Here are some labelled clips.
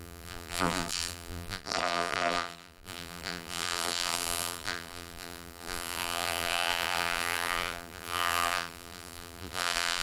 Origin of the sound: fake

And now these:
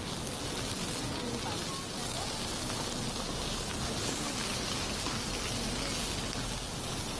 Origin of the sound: real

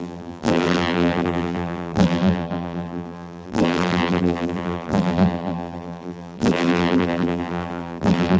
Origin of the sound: fake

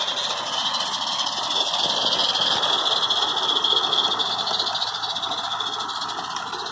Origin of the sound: real